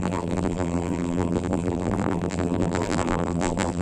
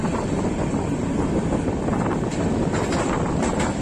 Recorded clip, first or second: second